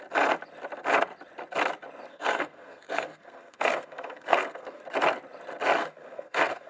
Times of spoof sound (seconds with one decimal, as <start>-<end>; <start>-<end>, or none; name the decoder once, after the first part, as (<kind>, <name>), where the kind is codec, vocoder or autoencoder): 2.1-4.8 (codec, SNAC); 5.8-6.7

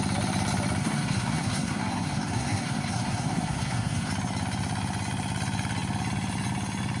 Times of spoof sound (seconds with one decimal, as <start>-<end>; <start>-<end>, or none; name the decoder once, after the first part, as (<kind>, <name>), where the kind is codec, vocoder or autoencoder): 0.8-4.1 (codec, SNAC)